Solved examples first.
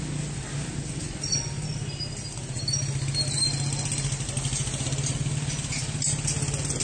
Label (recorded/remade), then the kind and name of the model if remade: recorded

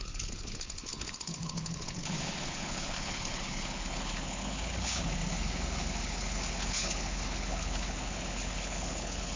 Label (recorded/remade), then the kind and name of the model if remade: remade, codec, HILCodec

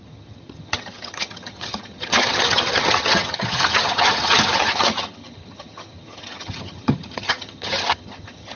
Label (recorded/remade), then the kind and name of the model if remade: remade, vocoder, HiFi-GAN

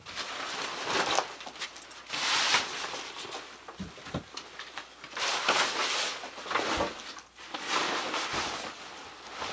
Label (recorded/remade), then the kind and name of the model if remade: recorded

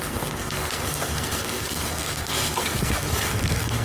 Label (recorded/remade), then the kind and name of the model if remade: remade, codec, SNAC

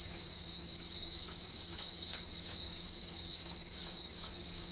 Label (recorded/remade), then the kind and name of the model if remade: remade, codec, DAC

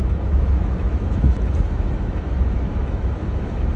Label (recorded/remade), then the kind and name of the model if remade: remade, autoencoder, DAC-VAE